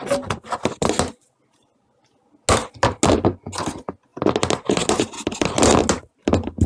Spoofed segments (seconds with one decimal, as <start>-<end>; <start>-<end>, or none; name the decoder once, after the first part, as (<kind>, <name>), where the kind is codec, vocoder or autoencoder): none